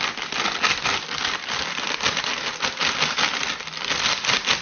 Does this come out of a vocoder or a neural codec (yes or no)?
no